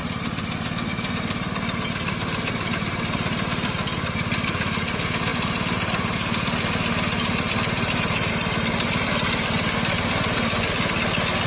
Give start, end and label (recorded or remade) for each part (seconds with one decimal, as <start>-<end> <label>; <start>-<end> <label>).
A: 0.0-11.5 recorded